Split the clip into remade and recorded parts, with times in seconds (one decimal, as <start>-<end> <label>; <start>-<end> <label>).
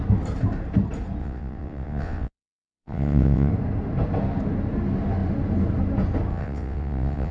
0.0-1.2 recorded; 1.2-3.5 remade; 3.5-6.3 recorded; 6.3-7.3 remade